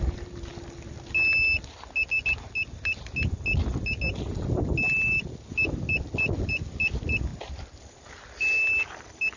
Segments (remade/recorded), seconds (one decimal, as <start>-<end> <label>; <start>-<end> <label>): 0.0-9.4 recorded